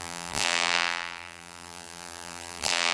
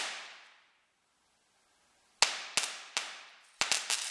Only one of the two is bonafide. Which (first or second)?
second